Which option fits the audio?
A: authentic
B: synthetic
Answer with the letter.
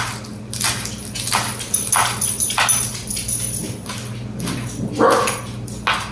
A